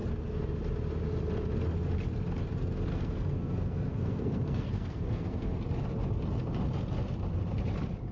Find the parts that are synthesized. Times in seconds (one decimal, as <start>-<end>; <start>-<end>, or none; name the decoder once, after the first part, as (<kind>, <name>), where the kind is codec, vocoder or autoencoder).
2.9-5.6 (codec, SNAC)